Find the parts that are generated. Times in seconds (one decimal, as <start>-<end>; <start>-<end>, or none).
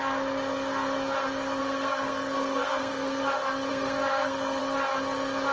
1.6-3.2; 3.7-4.6